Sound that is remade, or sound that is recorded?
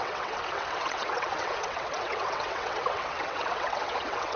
remade